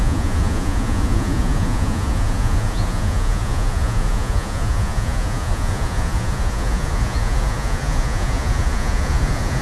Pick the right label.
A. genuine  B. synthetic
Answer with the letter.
B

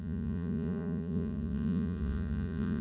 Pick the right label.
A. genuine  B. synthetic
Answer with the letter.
B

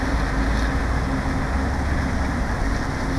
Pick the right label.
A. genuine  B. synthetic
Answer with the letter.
A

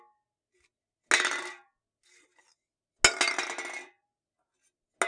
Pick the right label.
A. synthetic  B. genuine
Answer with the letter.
B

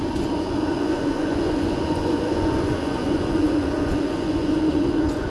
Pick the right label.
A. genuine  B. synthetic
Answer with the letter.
B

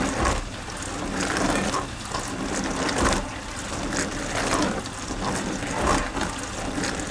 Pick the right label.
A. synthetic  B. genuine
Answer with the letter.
B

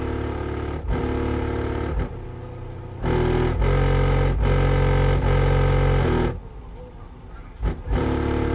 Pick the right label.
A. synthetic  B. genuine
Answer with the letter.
B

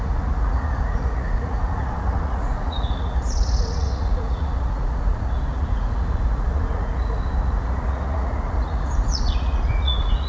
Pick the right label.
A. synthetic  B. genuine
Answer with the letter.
A